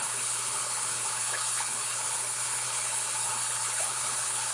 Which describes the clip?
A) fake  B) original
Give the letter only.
A